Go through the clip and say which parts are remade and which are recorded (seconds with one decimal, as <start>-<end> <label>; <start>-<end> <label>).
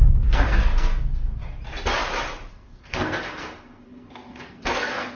0.0-1.4 remade; 1.4-2.5 recorded; 2.5-5.1 remade